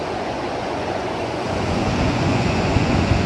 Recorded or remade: remade